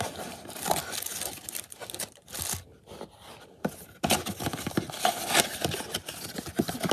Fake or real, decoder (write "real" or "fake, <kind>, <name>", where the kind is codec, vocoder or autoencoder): real